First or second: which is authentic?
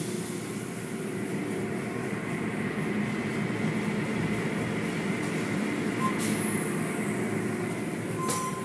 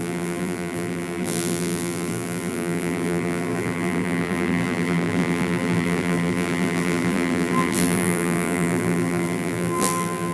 first